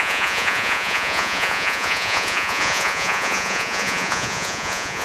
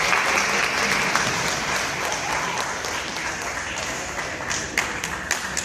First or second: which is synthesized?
first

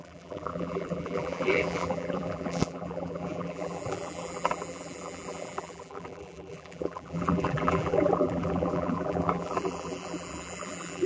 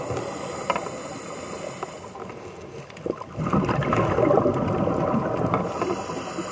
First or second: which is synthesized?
first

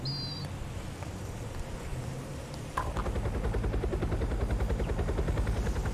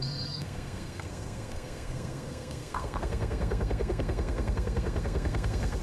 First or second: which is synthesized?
second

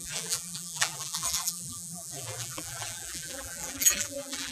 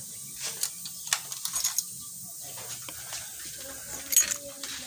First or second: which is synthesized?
first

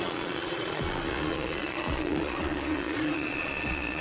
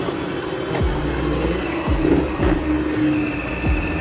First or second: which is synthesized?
first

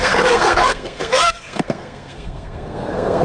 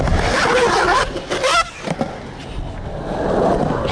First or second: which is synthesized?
first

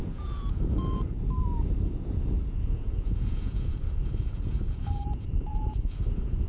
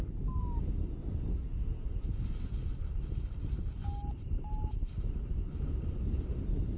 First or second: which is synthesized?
first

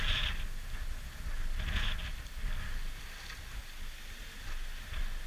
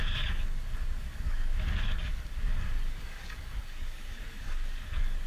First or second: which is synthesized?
second